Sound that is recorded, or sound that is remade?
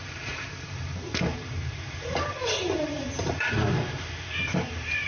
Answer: remade